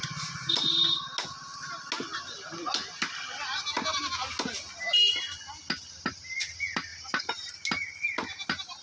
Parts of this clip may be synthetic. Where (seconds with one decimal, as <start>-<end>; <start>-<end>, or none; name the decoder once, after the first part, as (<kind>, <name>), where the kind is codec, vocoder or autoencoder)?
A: 6.9-7.5 (vocoder, BigVGAN v2)